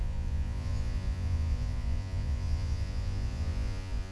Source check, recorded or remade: remade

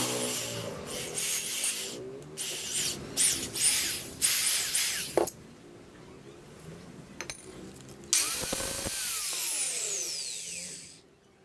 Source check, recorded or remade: recorded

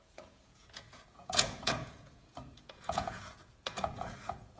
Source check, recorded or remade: remade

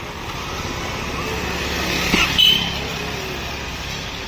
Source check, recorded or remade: recorded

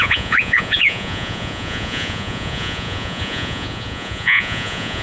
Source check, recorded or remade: remade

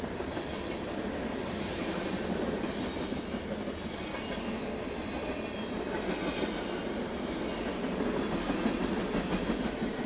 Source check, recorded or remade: recorded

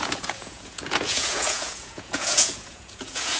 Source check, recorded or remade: remade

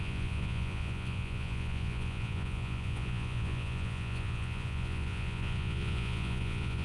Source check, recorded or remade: remade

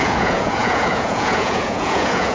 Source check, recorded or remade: remade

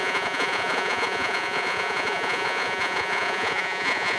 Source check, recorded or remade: remade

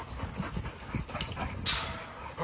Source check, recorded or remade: recorded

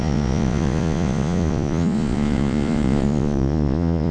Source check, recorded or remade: remade